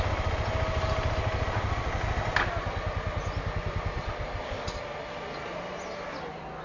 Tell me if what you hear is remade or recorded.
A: recorded